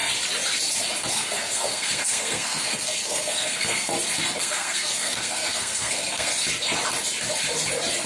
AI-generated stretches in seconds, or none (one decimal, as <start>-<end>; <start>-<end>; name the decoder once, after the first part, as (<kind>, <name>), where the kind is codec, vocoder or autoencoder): 1.1-3.9 (codec, SNAC); 4.4-6.3